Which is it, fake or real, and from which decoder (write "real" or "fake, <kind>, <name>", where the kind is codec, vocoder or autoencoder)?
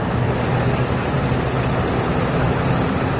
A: real